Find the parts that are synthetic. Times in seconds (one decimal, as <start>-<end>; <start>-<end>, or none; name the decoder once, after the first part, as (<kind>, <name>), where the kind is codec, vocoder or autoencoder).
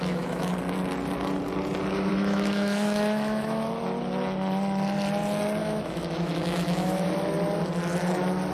0.0-0.5 (autoencoder, DAC-VAE); 2.1-3.6; 5.6-7.1